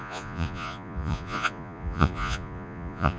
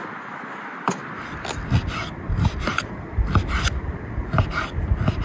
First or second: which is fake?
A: first